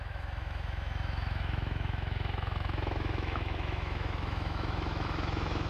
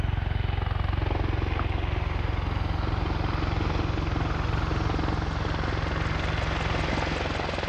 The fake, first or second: first